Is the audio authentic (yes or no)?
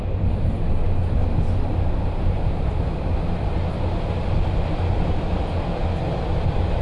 yes